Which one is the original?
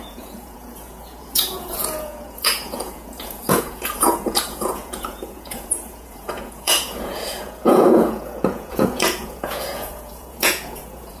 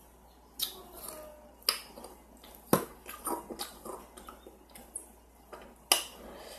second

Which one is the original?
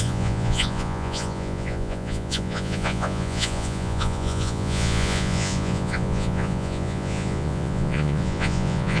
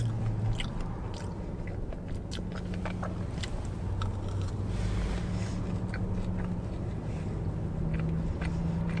second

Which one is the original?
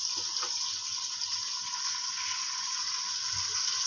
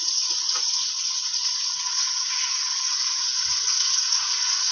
first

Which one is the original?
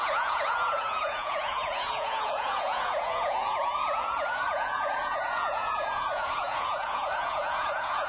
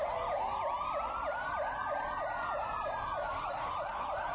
second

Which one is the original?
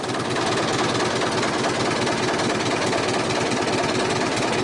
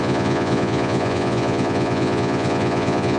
first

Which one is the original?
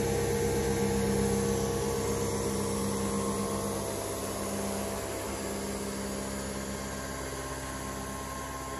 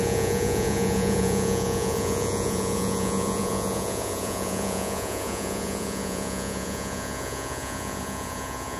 first